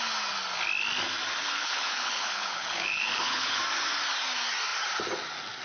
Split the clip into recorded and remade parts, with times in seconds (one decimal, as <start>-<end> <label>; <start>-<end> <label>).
0.0-1.4 recorded; 1.4-3.6 remade; 3.6-5.6 recorded